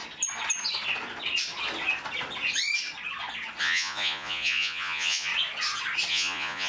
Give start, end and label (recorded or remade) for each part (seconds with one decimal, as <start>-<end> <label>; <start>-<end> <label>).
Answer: 0.0-3.6 recorded; 3.6-5.3 remade; 5.3-6.1 recorded; 6.1-6.7 remade